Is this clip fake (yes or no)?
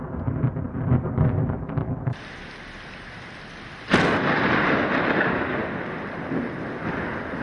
no